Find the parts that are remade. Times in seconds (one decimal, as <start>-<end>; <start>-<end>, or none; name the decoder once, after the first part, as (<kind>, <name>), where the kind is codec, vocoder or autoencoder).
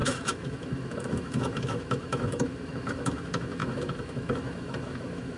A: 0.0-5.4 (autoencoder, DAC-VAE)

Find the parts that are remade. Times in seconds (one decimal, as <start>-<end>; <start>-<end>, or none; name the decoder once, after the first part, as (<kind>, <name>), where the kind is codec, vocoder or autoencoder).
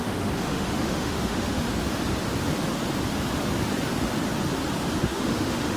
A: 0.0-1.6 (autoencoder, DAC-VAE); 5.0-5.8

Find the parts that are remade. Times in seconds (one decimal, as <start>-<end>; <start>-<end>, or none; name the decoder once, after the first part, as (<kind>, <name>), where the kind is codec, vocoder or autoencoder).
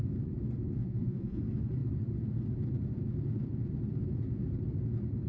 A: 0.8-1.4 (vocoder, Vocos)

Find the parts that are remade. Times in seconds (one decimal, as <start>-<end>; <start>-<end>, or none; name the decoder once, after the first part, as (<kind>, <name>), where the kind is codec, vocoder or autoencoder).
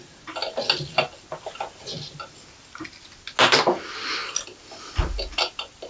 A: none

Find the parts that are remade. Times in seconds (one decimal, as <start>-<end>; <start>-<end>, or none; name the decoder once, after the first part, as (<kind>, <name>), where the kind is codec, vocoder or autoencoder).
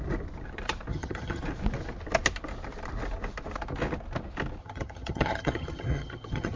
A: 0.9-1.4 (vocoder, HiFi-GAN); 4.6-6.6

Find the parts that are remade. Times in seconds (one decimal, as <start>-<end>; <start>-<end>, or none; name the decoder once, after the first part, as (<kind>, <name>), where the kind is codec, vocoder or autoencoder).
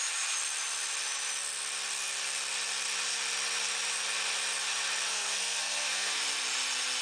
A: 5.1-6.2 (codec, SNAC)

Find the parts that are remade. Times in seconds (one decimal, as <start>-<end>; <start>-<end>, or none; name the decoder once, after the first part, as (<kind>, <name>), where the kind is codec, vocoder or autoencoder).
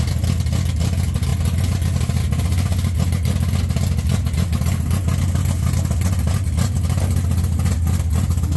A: none